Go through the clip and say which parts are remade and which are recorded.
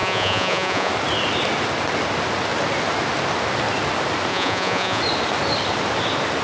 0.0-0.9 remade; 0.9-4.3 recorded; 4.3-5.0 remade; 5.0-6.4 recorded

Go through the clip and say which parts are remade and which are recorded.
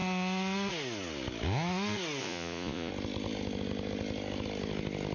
0.0-2.2 recorded; 2.2-2.9 remade; 2.9-5.1 recorded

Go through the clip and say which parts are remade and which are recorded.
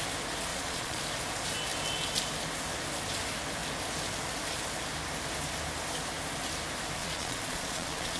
0.0-0.5 recorded; 0.5-1.0 remade; 1.0-7.0 recorded; 7.0-8.2 remade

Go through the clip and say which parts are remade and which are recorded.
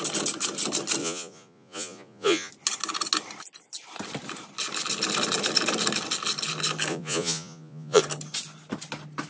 0.0-1.0 recorded; 1.0-2.5 remade; 2.5-6.9 recorded; 6.9-8.0 remade; 8.0-9.3 recorded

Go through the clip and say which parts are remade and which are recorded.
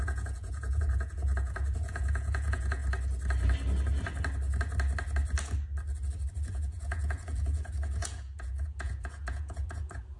0.0-2.8 remade; 2.8-6.3 recorded; 6.3-10.2 remade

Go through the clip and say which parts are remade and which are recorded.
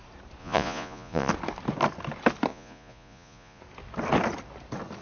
0.0-0.4 recorded; 0.4-1.3 remade; 1.3-2.5 recorded; 2.5-3.6 remade; 3.6-5.0 recorded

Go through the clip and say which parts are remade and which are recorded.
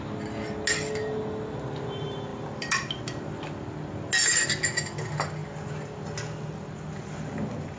0.0-7.8 recorded